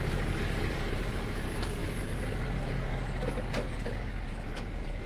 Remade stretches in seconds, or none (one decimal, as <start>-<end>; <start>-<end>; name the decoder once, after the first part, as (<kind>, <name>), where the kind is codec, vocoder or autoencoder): 0.0-5.1 (codec, DAC)

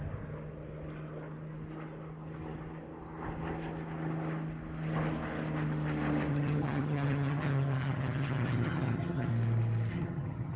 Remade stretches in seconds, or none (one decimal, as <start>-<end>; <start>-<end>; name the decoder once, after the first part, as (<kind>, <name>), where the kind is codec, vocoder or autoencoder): 6.3-9.3 (vocoder, HiFi-GAN); 9.9-10.6

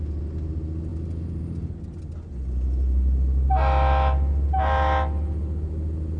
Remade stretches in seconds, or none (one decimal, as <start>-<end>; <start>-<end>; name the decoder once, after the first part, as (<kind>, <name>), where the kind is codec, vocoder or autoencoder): none

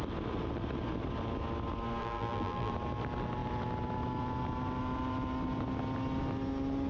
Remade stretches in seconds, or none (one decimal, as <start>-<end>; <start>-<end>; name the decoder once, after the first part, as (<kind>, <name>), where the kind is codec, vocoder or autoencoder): 2.0-2.7 (vocoder, BigVGAN v2)

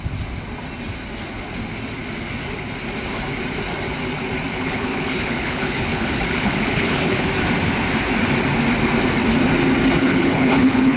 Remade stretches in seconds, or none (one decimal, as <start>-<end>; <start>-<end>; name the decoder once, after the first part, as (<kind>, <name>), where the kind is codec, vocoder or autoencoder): 4.5-7.3 (codec, HILCodec); 10.0-11.0

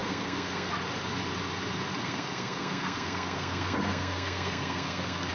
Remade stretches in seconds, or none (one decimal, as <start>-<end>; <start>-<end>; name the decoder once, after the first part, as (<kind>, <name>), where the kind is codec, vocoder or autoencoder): 0.0-0.7 (codec, SNAC); 2.0-5.3

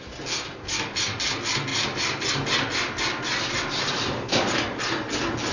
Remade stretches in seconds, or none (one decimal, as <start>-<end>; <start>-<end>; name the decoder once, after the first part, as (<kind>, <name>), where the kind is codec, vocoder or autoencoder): none